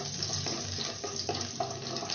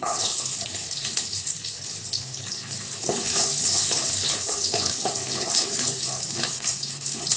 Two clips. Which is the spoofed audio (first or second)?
second